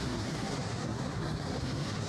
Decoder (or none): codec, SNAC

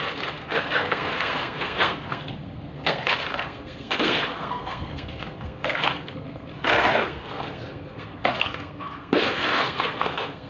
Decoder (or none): codec, SNAC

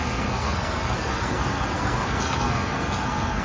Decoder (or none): codec, SNAC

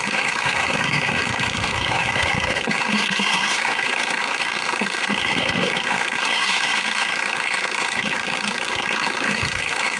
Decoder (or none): codec, SNAC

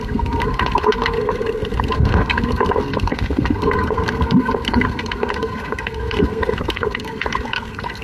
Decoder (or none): codec, SNAC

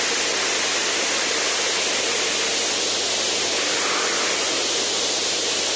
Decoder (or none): none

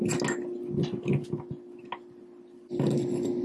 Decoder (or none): none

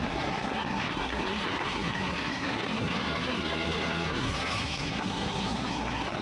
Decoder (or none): codec, SNAC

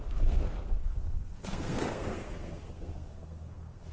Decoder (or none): codec, SNAC